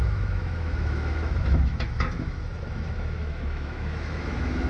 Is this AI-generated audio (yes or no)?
yes